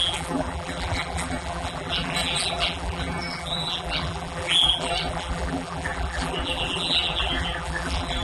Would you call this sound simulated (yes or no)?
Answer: yes